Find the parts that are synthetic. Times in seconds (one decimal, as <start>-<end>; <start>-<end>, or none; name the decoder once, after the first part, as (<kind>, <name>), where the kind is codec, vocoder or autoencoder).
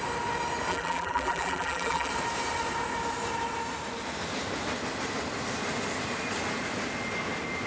0.7-2.1 (vocoder, BigVGAN v2)